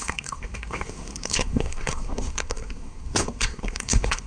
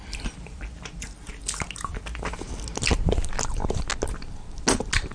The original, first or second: second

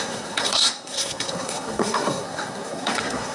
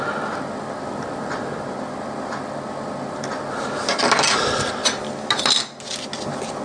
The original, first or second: second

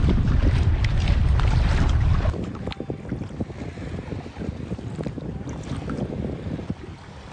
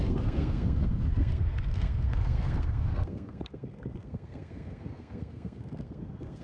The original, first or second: first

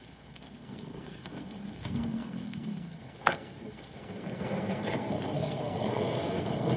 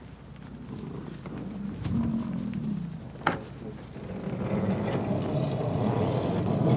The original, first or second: second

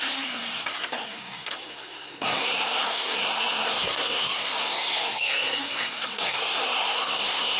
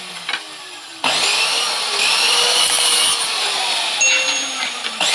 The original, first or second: second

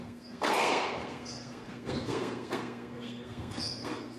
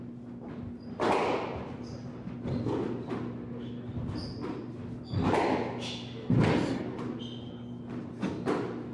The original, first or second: second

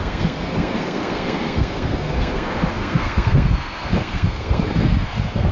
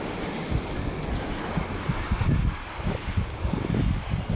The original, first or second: second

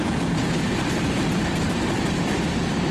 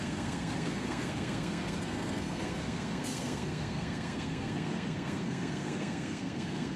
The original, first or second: first